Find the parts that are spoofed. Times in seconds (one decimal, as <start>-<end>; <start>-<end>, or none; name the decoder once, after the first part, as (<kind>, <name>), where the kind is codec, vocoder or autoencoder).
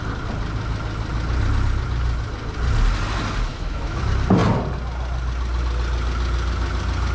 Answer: 3.5-4.0 (autoencoder, DAC-VAE)